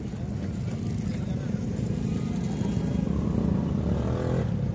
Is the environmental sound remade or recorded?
recorded